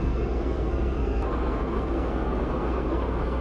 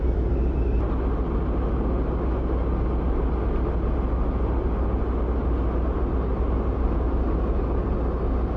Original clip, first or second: second